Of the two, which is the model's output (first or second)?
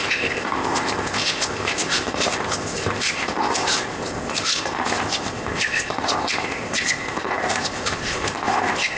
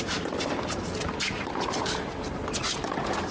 first